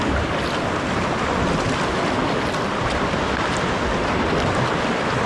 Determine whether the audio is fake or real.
real